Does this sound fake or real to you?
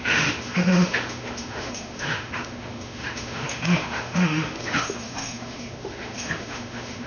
fake